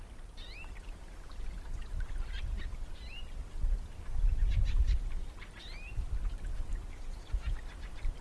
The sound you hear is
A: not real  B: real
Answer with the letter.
B